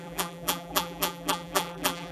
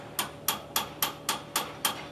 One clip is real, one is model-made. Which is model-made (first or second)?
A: first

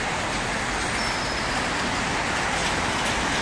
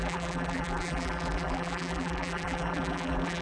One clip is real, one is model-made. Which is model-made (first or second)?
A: second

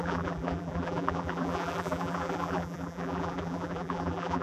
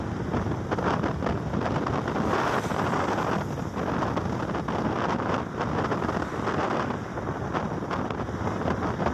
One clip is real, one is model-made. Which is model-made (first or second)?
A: first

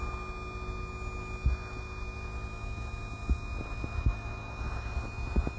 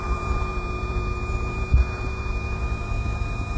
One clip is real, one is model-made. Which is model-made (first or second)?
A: second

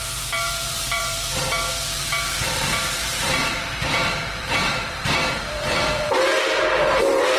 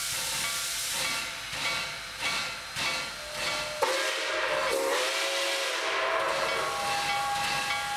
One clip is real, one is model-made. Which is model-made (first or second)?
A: first